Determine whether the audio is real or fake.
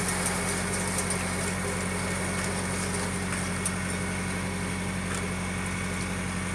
real